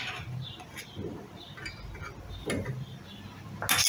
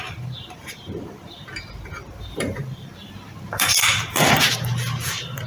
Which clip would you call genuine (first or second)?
first